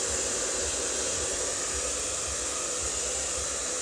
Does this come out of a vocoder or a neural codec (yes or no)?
no